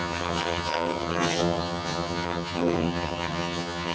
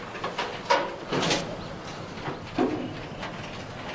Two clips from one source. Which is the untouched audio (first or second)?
second